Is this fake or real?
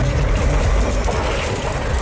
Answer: real